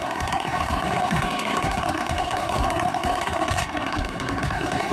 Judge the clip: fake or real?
fake